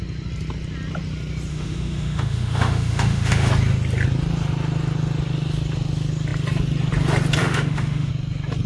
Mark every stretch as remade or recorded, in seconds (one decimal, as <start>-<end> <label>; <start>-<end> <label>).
0.0-1.5 recorded; 1.5-3.5 remade; 3.5-7.4 recorded; 7.4-8.1 remade; 8.1-8.7 recorded